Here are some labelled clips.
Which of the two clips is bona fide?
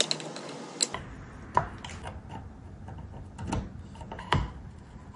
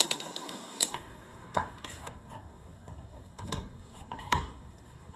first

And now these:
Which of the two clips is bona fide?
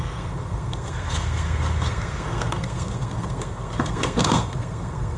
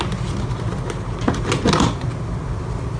second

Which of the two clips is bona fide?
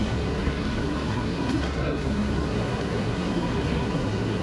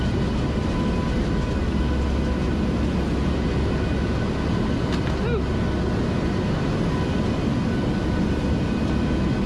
second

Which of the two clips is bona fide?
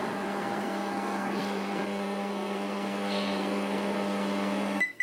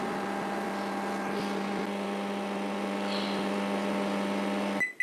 second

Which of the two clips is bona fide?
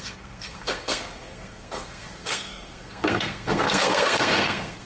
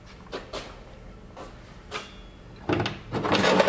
second